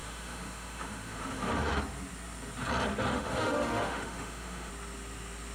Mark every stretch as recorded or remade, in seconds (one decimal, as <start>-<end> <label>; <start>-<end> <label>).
0.0-1.8 remade; 1.8-3.1 recorded; 3.1-4.7 remade; 4.7-5.5 recorded